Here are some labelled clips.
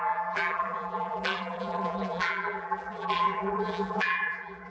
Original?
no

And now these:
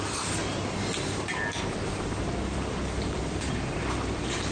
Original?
yes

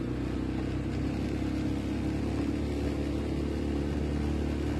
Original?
yes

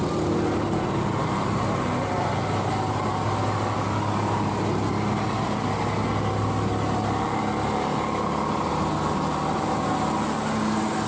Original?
yes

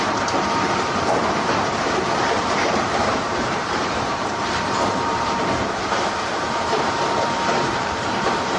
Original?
no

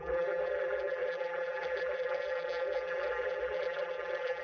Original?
no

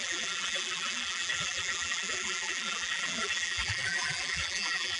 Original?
no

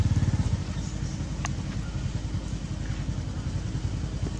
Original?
yes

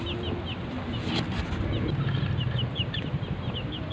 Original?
yes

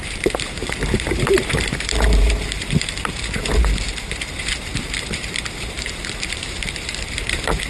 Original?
no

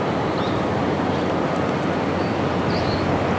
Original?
yes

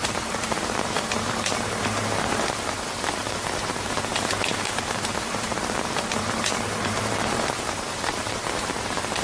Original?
no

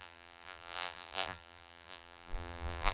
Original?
no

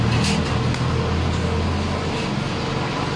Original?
yes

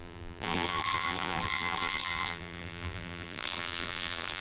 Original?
no